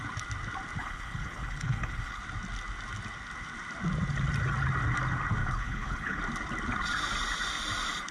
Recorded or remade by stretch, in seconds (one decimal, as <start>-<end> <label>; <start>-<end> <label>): 0.0-0.8 recorded; 0.8-2.2 remade; 2.2-5.4 recorded; 5.4-6.2 remade; 6.2-8.1 recorded